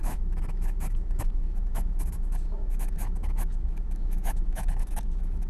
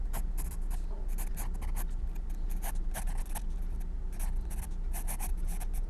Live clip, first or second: second